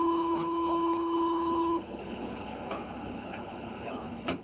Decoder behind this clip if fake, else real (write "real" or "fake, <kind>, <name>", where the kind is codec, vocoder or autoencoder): fake, codec, HILCodec